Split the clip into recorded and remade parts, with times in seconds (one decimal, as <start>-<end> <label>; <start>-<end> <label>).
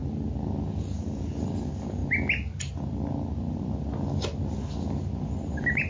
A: 0.0-5.9 recorded